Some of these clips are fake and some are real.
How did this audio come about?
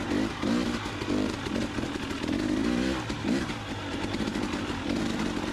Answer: real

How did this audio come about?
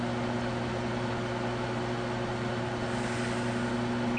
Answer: real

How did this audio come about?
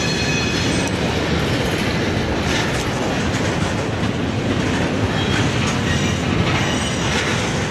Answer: real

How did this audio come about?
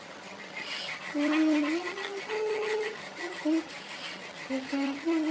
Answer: fake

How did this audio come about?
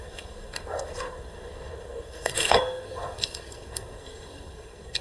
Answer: fake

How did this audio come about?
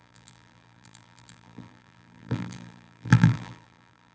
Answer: fake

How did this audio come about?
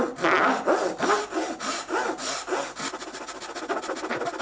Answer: real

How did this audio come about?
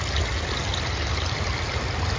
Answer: real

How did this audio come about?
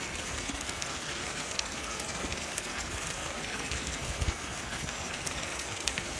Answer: fake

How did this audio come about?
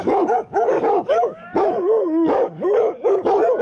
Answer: fake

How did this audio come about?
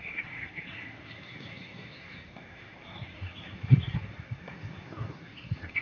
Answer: fake